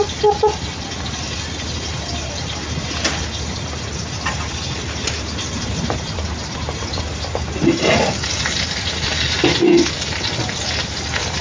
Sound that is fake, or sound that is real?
fake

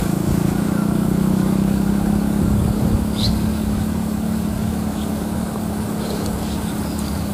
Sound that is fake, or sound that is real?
fake